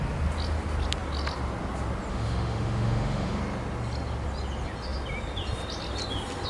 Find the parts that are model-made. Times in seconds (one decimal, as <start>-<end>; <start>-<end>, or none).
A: 2.1-3.4